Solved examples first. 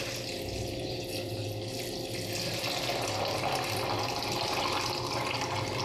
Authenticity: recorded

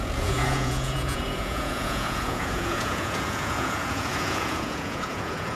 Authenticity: remade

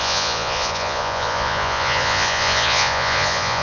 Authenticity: remade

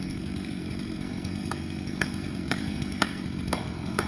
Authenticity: remade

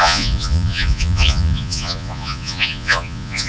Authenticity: remade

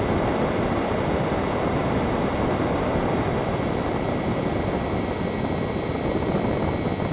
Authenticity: recorded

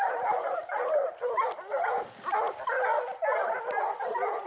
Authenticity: recorded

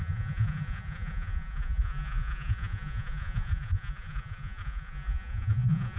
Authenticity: remade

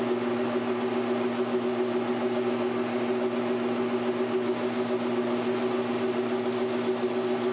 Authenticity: recorded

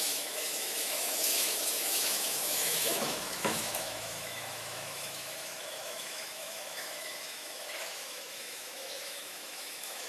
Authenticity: remade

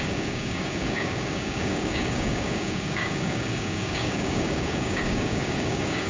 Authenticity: remade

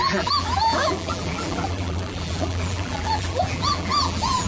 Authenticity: remade